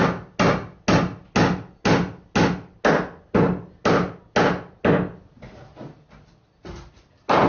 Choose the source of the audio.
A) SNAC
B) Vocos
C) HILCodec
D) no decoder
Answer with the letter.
D